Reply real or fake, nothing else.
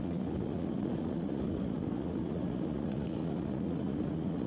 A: fake